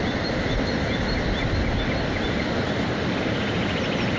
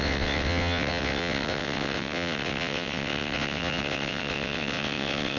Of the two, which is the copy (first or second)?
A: second